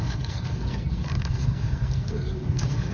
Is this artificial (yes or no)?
yes